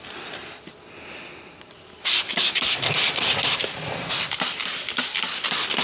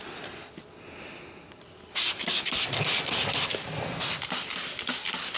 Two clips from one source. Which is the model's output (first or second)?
first